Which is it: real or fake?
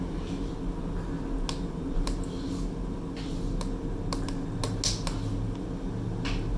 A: real